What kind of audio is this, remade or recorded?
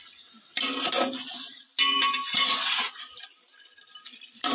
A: recorded